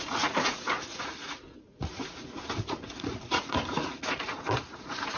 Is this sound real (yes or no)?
no